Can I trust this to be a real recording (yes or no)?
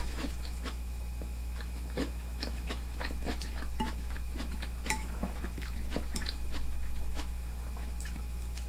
no